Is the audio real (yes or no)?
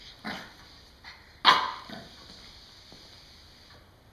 yes